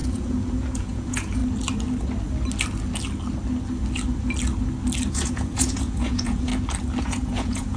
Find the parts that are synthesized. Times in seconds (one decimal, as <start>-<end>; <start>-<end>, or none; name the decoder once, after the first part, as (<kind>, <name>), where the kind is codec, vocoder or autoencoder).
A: 0.0-1.4 (vocoder, Vocos); 5.1-6.5; 7.0-7.8